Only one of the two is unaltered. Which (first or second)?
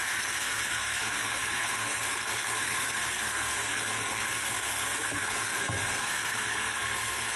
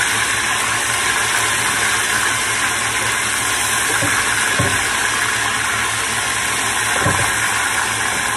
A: second